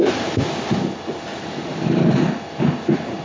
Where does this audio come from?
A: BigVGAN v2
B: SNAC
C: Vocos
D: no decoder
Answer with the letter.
A